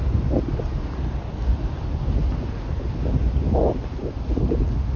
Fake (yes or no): no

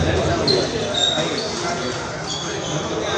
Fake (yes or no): no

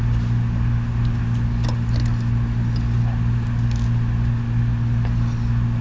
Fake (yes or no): no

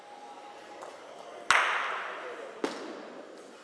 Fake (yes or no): no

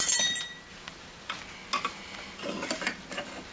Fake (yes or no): no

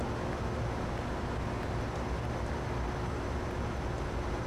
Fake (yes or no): no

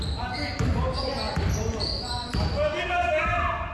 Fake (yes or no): no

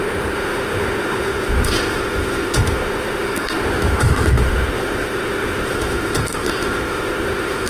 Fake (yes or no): yes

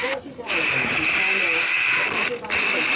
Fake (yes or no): no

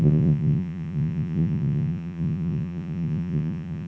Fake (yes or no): yes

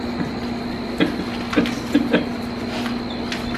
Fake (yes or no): no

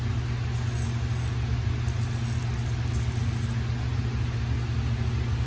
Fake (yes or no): no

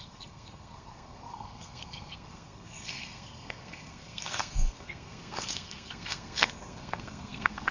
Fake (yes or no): yes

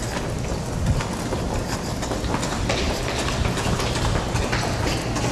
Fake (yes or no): no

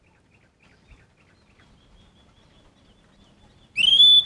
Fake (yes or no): no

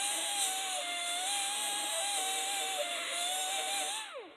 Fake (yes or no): yes